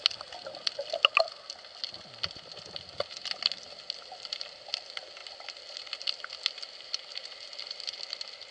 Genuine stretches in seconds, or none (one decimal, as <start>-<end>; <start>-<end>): 0.0-5.2; 6.0-8.5